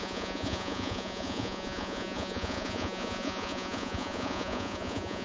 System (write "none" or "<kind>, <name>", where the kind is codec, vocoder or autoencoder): vocoder, Vocos